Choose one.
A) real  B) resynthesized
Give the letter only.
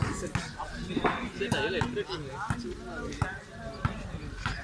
A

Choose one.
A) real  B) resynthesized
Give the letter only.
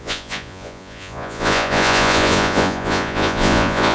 B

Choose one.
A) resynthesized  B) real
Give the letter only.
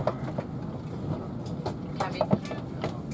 B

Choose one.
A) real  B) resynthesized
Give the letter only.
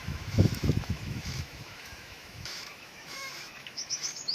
B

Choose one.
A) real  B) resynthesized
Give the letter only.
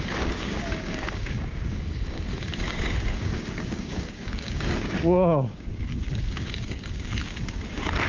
B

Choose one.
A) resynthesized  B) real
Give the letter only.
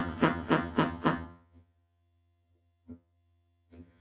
A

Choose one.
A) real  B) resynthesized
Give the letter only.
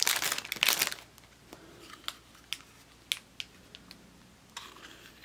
A